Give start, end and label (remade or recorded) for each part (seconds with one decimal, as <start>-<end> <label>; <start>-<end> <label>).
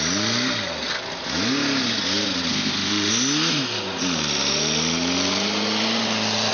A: 0.0-2.5 recorded; 2.5-3.1 remade; 3.1-6.5 recorded